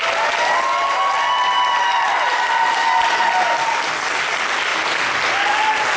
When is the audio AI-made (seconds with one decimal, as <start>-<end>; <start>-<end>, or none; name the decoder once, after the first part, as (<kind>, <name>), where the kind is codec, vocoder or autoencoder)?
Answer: none